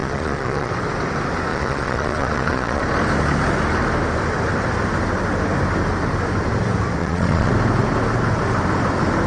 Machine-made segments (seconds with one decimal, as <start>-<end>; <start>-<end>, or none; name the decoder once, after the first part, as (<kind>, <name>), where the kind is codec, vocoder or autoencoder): 0.0-0.7 (vocoder, Vocos); 1.5-2.8; 7.0-7.5